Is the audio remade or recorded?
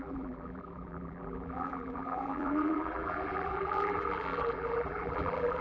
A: remade